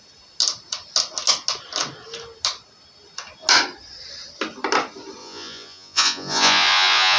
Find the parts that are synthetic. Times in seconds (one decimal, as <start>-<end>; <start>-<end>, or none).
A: 5.2-7.2